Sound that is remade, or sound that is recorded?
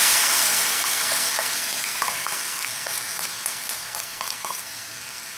remade